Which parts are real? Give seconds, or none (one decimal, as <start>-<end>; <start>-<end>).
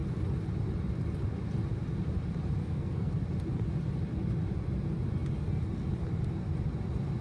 0.0-2.6; 3.1-7.2